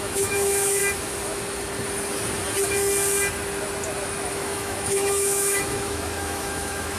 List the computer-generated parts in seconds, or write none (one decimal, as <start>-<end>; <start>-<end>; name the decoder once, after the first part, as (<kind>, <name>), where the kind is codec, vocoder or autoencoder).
0.0-0.8 (autoencoder, DAC-VAE); 4.3-7.0